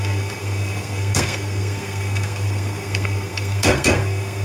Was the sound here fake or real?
fake